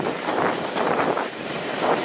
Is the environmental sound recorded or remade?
recorded